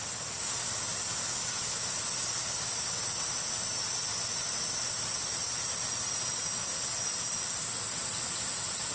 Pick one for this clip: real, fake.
real